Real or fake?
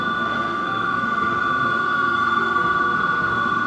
fake